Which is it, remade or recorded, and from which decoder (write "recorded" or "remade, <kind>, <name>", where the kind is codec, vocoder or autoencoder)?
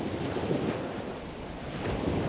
recorded